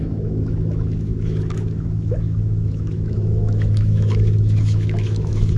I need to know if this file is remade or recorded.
remade